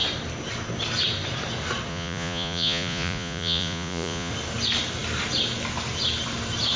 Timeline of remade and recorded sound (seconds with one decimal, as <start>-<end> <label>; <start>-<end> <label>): 0.0-1.9 recorded; 1.9-4.3 remade; 4.3-6.8 recorded